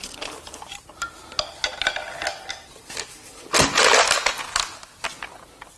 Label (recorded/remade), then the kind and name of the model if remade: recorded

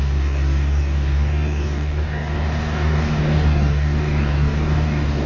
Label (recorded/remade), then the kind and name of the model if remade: remade, codec, DAC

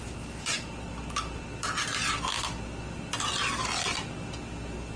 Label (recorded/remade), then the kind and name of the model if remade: recorded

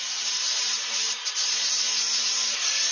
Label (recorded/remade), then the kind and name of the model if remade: remade, vocoder, BigVGAN v2